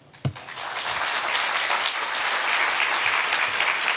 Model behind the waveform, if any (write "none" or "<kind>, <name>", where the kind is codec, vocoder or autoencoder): none